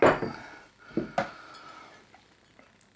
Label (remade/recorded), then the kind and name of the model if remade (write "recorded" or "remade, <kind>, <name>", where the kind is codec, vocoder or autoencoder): recorded